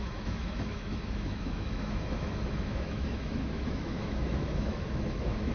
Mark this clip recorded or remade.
remade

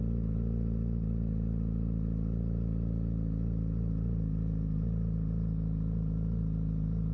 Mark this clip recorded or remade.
recorded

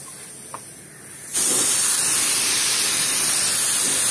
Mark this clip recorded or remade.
recorded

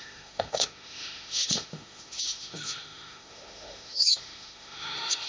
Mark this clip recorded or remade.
remade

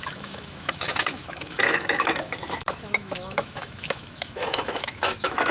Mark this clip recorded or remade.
remade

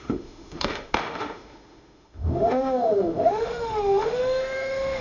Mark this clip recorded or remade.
remade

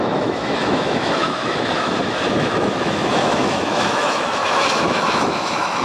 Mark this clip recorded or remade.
remade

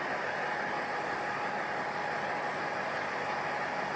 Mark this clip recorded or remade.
recorded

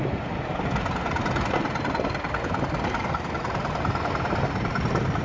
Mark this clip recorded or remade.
recorded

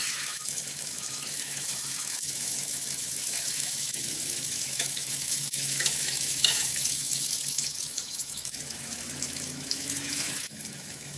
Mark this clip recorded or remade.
remade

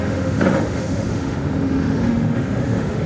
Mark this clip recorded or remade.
remade